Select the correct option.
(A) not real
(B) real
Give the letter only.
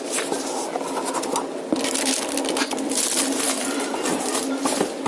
B